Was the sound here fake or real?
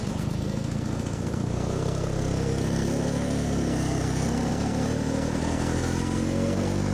fake